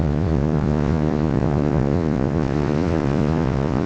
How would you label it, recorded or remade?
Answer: remade